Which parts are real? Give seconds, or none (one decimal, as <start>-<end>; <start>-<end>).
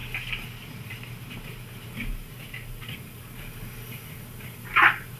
0.0-5.2